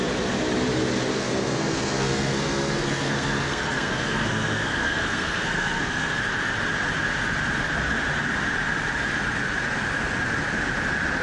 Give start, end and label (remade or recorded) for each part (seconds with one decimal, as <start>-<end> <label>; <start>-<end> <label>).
0.0-1.1 recorded; 1.1-6.2 remade; 6.2-11.2 recorded